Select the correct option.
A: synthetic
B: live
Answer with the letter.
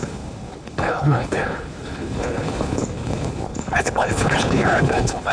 A